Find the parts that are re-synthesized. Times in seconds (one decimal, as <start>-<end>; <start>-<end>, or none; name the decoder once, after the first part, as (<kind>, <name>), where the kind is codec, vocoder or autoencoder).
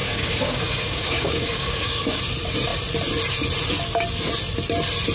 0.0-2.2 (codec, DAC)